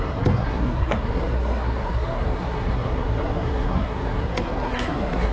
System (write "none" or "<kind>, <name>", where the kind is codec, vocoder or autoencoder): codec, SNAC